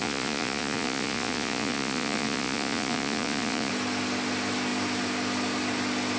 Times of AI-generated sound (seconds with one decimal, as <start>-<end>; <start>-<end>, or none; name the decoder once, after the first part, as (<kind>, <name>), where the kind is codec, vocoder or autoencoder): 0.0-3.7 (vocoder, Vocos)